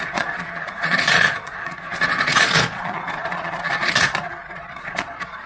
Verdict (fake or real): fake